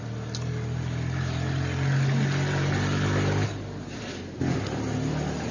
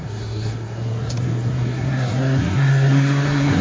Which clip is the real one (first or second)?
first